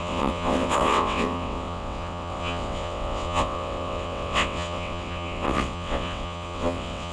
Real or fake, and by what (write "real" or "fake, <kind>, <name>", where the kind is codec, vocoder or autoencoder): fake, vocoder, WaveNeXt